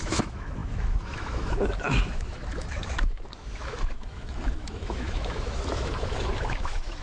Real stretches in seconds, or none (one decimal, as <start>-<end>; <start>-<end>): none